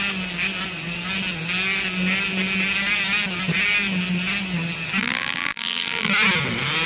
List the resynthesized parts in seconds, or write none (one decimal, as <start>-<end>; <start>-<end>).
5.0-6.1